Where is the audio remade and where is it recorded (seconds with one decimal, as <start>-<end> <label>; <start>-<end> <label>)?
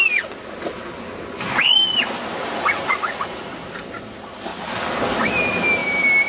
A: 0.0-2.4 recorded; 2.4-3.7 remade; 3.7-6.3 recorded